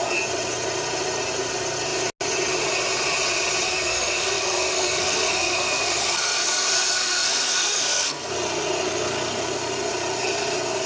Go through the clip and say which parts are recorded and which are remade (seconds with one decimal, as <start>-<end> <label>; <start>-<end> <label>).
0.0-3.7 recorded; 3.7-8.3 remade; 8.3-10.9 recorded